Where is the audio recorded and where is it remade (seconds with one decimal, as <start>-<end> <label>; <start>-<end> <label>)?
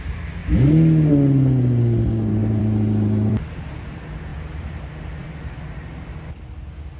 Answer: 0.0-2.4 recorded; 2.4-3.8 remade; 3.8-4.3 recorded; 4.3-5.5 remade; 5.5-7.0 recorded